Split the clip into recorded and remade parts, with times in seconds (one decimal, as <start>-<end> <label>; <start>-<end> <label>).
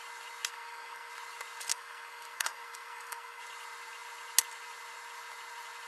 0.0-0.5 recorded; 0.5-1.1 remade; 1.1-1.7 recorded; 1.7-3.4 remade; 3.4-5.9 recorded